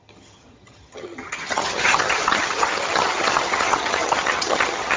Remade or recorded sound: remade